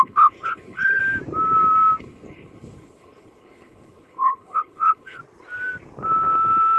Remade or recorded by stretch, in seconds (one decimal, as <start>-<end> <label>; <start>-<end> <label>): 0.0-1.0 remade; 1.0-2.0 recorded; 2.0-5.2 remade; 5.2-6.8 recorded